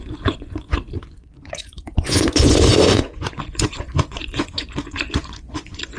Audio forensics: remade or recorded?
remade